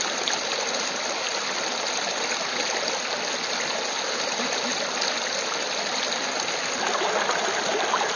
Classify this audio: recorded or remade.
recorded